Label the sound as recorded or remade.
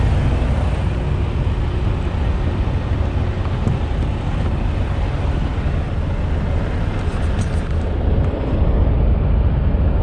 recorded